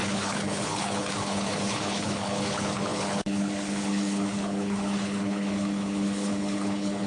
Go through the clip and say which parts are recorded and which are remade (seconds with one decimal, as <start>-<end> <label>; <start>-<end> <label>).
0.0-7.1 remade